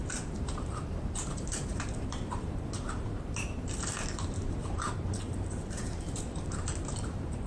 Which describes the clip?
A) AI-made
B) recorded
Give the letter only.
A